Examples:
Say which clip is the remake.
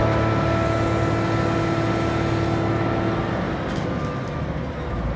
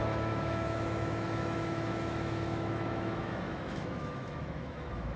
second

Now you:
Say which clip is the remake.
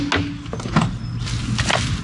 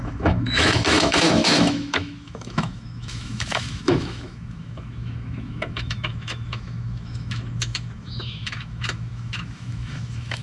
second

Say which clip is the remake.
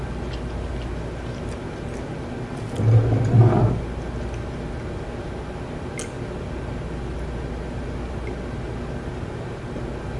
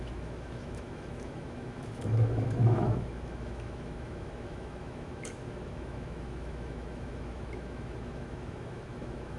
second